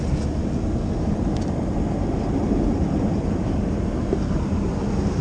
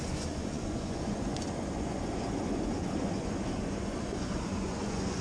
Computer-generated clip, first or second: second